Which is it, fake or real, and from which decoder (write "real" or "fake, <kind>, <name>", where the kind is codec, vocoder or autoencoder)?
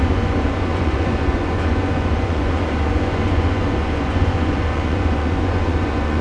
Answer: fake, vocoder, Vocos